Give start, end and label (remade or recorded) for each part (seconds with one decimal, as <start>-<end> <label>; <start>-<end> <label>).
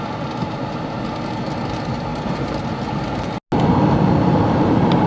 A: 0.0-0.4 recorded; 0.4-1.0 remade; 1.0-2.1 recorded; 2.1-2.7 remade; 2.7-5.1 recorded